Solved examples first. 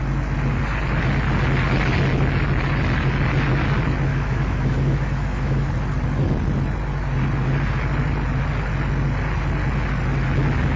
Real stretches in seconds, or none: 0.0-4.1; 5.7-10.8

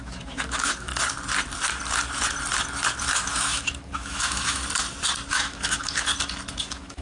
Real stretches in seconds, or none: 0.9-3.0; 4.6-5.3; 6.1-6.6

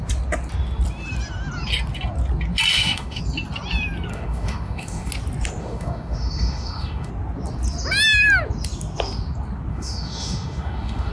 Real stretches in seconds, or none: 0.0-2.7; 3.2-4.1; 5.1-5.6; 7.1-9.7